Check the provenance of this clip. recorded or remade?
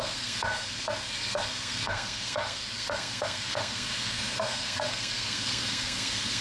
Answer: remade